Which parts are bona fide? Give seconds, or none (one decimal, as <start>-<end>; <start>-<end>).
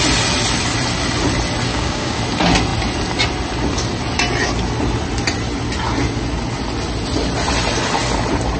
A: 0.0-1.7; 2.2-8.6